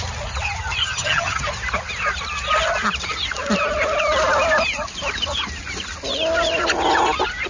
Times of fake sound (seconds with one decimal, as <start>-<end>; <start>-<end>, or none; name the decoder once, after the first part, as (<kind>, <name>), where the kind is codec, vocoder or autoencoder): 0.8-1.4 (vocoder, HiFi-GAN)